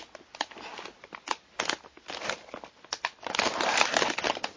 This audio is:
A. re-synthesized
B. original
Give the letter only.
B